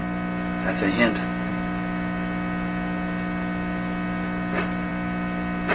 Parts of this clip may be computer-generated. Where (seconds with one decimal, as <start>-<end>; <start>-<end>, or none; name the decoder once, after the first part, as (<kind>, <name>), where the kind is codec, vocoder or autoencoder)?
none